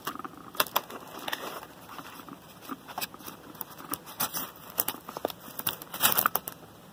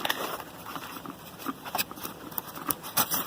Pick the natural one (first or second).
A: first